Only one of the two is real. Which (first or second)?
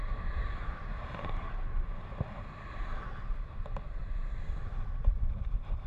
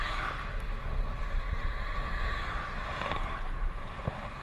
second